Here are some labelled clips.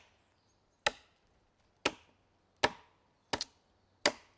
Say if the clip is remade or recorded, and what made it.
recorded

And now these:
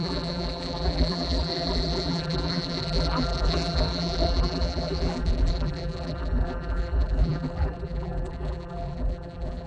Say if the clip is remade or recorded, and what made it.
remade, vocoder, BigVGAN v2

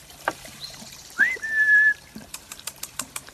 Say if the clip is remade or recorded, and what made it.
remade, vocoder, BigVGAN v2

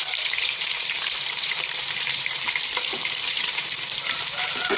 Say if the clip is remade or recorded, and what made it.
remade, vocoder, BigVGAN v2